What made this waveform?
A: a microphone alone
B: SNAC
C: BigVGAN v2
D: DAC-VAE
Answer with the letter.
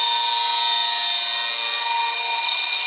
A